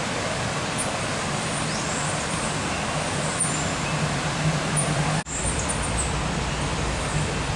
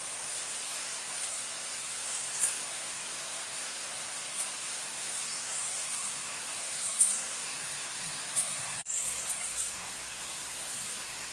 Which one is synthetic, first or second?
second